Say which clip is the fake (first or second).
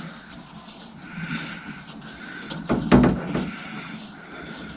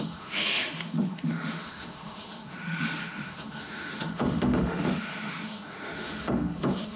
second